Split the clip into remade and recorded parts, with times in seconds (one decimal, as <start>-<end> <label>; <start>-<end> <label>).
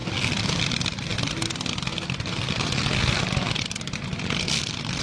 0.0-5.0 recorded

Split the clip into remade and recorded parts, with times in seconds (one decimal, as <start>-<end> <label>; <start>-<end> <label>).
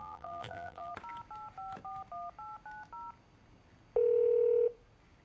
0.0-0.9 remade; 0.9-5.2 recorded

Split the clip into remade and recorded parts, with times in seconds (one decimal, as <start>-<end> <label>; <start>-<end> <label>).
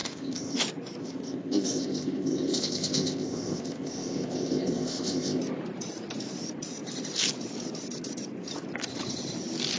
0.0-0.6 remade; 0.6-1.0 recorded; 1.0-5.4 remade; 5.4-9.8 recorded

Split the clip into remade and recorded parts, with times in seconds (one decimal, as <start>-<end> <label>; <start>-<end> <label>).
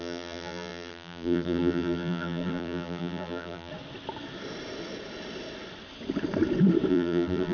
0.0-3.7 remade; 3.7-6.9 recorded; 6.9-7.5 remade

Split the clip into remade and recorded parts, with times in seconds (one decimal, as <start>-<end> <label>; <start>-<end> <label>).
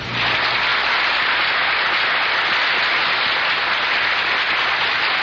0.0-5.2 recorded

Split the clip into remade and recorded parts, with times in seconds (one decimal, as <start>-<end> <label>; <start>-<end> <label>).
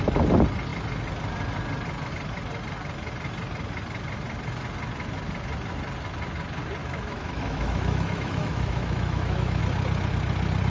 0.0-6.8 recorded; 6.8-9.6 remade; 9.6-10.7 recorded